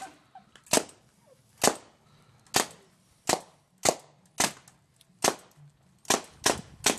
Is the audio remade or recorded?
recorded